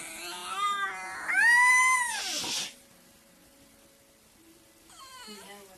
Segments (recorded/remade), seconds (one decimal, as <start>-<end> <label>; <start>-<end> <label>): 0.0-5.8 recorded